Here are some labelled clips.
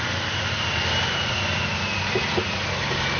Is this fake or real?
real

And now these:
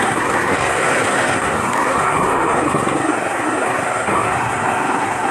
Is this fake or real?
fake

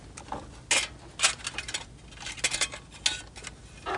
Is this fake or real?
real